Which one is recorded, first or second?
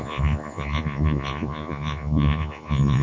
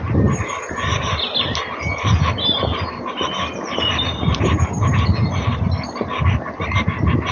second